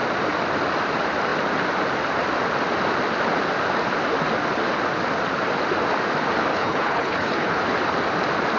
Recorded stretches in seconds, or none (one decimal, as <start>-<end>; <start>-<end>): 0.0-6.5; 7.6-8.6